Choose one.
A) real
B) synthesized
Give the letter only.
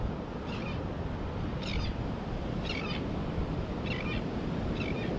B